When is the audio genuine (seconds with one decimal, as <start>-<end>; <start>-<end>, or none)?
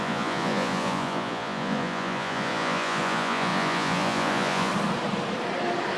4.7-6.0